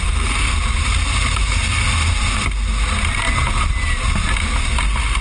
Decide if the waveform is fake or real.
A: real